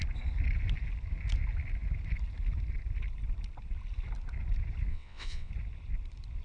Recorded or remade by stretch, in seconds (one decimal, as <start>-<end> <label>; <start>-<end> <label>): 0.0-4.9 recorded; 4.9-5.5 remade; 5.5-6.4 recorded